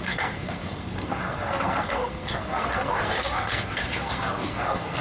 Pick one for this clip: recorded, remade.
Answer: remade